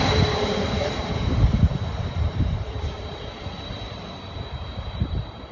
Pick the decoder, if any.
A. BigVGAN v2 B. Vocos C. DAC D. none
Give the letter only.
A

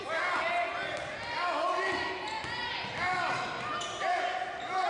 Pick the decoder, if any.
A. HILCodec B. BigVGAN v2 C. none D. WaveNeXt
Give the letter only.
C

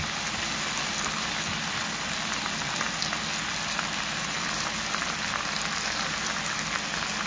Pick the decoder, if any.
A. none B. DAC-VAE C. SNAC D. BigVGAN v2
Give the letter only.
A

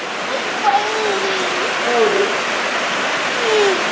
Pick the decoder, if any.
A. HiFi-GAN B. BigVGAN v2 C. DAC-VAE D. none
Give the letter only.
D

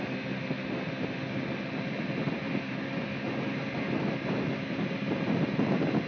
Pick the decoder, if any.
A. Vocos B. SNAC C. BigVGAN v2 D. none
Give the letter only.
D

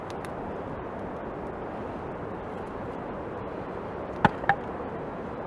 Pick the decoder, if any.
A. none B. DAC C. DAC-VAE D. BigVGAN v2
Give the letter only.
A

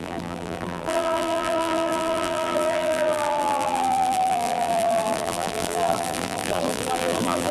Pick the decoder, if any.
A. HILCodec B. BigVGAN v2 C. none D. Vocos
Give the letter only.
B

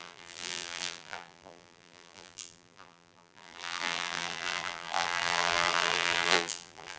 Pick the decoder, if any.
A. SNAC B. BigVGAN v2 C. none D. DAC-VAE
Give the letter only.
B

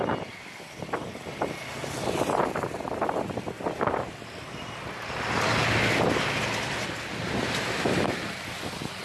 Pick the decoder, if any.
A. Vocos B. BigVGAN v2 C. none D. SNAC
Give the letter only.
B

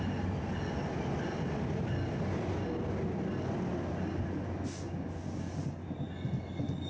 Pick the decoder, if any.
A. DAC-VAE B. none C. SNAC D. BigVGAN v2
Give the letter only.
B